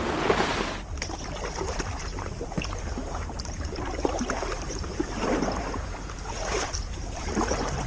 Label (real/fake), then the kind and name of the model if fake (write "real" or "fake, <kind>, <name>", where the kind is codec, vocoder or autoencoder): fake, vocoder, BigVGAN v2